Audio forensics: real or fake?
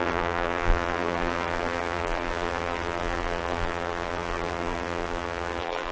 fake